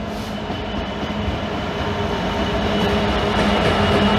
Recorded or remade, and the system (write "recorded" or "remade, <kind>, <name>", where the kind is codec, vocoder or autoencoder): recorded